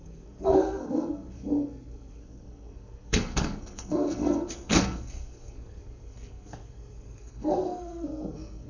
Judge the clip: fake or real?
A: fake